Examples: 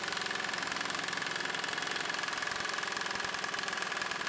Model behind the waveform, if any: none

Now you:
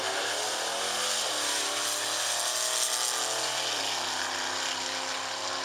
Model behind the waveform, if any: none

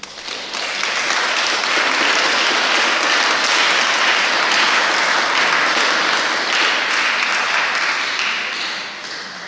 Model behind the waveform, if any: none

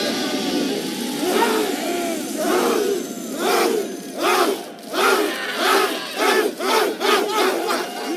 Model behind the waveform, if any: none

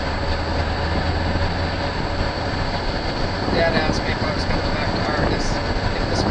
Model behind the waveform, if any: none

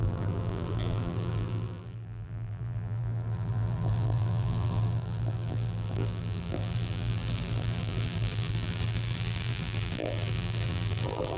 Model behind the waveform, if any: vocoder, BigVGAN v2